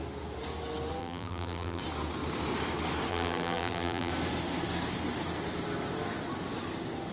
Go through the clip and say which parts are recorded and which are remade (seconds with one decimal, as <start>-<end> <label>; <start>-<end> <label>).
0.0-1.0 recorded; 1.0-1.8 remade; 1.8-3.1 recorded; 3.1-4.1 remade; 4.1-7.1 recorded